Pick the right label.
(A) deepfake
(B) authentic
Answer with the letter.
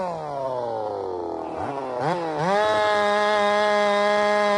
B